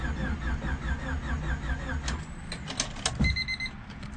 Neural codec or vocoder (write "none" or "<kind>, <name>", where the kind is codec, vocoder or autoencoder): none